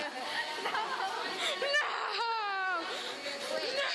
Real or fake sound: real